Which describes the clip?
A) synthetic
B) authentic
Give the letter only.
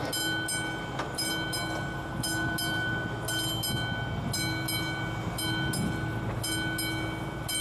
B